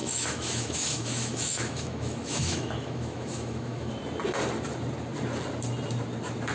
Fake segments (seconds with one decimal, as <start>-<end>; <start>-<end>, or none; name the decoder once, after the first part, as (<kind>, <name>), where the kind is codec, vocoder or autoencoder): 0.0-3.9 (autoencoder, DAC-VAE)